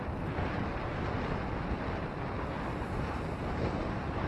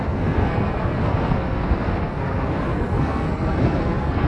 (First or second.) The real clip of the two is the first